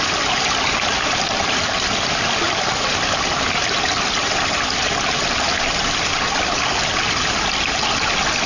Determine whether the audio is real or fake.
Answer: real